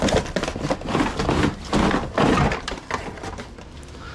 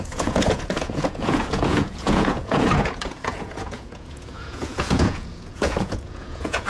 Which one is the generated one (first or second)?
second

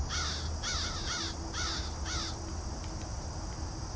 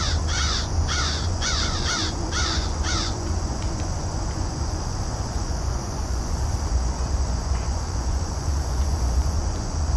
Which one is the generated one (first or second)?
second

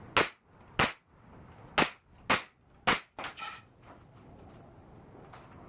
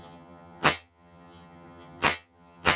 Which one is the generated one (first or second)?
second